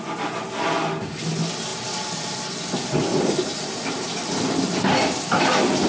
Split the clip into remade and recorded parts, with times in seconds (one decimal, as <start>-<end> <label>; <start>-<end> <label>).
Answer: 0.0-5.9 recorded